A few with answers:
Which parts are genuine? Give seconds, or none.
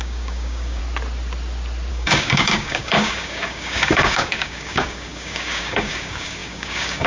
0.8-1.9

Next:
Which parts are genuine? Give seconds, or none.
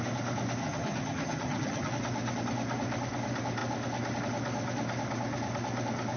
0.0-0.6; 1.9-6.2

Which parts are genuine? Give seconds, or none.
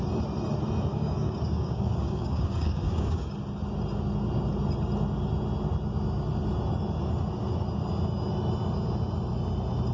0.0-0.9; 3.3-9.9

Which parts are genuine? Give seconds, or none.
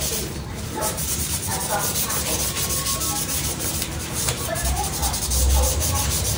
1.5-3.2; 5.0-6.4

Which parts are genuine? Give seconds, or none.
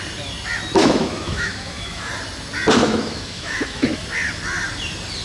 0.0-0.8; 2.1-2.8; 4.0-5.2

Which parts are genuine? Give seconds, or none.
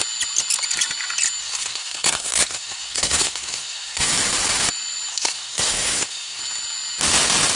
0.0-1.4; 4.1-5.1; 6.4-7.6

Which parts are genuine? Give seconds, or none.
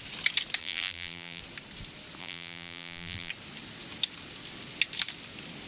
0.0-0.6; 1.4-2.2; 3.3-5.7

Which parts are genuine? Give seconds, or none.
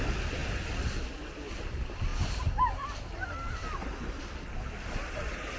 0.0-5.6